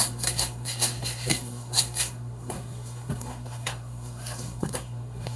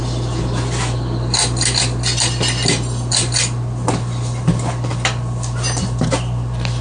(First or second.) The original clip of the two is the second